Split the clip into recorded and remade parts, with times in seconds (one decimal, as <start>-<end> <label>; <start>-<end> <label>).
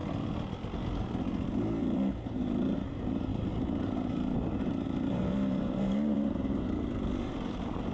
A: 0.0-1.6 recorded; 1.6-7.9 remade